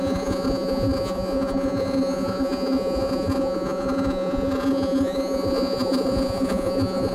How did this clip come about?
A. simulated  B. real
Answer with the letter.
A